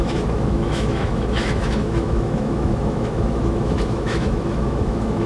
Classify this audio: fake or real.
fake